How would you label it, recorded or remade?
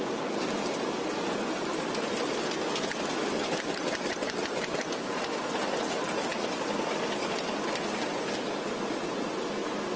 recorded